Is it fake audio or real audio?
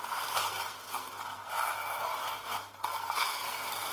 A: fake